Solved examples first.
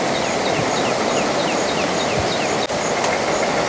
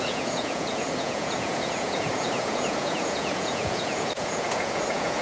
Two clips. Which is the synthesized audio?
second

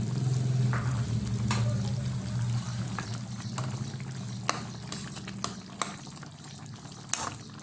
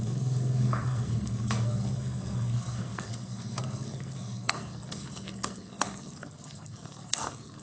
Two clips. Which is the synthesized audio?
second